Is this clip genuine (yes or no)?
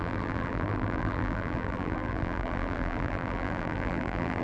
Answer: no